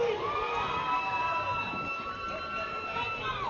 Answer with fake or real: real